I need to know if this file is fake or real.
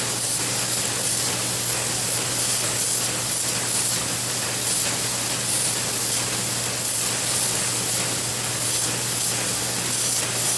real